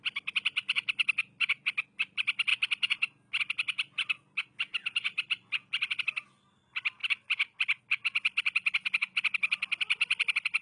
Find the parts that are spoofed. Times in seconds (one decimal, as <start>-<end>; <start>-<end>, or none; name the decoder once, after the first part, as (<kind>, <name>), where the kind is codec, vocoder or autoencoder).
none